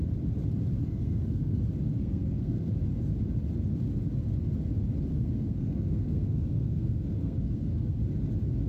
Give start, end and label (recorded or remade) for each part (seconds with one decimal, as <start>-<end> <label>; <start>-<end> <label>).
0.0-0.8 recorded; 0.8-1.6 remade; 1.6-2.0 recorded; 2.0-2.7 remade; 2.7-5.1 recorded; 5.1-8.0 remade; 8.0-8.7 recorded